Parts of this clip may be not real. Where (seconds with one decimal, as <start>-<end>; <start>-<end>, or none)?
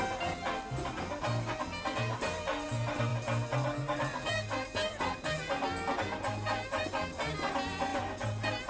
none